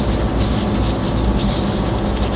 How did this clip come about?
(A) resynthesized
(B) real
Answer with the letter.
B